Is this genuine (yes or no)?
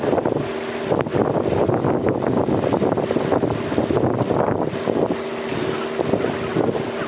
yes